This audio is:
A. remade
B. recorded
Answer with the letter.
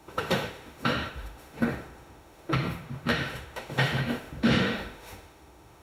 A